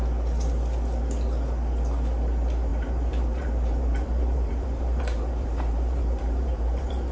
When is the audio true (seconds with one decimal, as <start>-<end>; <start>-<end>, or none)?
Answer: 0.0-2.7

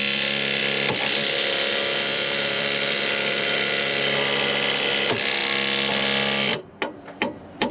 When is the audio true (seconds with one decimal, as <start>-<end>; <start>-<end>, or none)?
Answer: 0.0-0.6; 1.7-2.1; 3.7-7.7

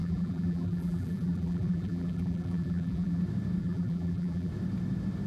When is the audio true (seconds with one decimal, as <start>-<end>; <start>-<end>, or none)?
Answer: 3.2-3.6; 4.5-5.3

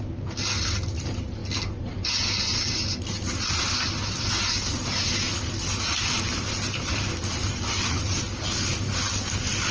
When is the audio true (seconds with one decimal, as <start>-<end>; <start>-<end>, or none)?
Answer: 0.0-9.7